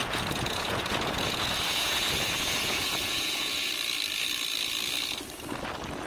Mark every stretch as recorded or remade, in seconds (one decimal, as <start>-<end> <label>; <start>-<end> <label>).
0.0-3.7 remade; 3.7-6.1 recorded